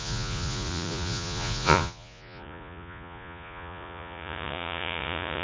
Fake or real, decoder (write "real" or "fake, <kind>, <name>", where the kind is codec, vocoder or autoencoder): fake, vocoder, Vocos